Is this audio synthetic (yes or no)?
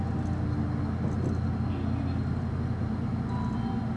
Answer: no